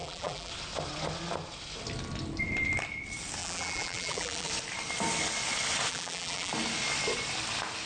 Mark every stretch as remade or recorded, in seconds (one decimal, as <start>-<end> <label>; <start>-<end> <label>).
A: 0.0-0.5 remade; 0.5-3.4 recorded; 3.4-4.5 remade; 4.5-5.9 recorded; 5.9-6.5 remade; 6.5-7.9 recorded